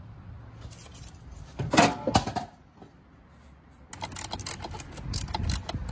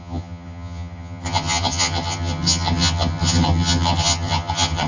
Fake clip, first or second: second